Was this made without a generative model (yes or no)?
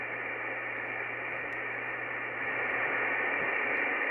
yes